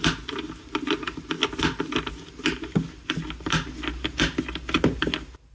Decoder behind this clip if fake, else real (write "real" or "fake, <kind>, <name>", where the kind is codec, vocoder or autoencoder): real